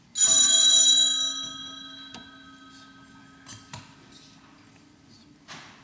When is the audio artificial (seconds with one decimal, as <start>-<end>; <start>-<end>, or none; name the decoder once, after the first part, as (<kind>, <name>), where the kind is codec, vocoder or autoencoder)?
1.6-3.2 (vocoder, BigVGAN v2)